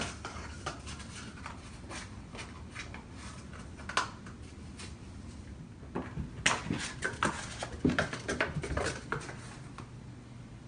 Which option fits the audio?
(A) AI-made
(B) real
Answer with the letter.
B